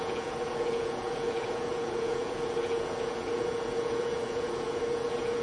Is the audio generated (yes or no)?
yes